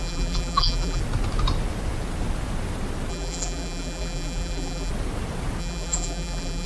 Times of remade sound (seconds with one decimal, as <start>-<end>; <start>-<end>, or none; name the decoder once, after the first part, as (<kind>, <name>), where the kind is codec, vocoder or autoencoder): 0.0-1.0 (vocoder, BigVGAN v2); 3.1-4.9; 5.6-6.7